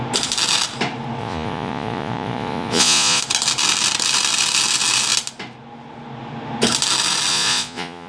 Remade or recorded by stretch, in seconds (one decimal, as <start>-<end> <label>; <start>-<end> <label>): 0.0-1.2 recorded; 1.2-3.2 remade; 3.2-7.3 recorded; 7.3-8.1 remade